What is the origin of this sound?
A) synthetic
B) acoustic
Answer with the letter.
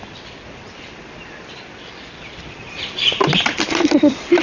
A